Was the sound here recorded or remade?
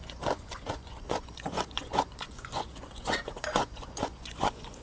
remade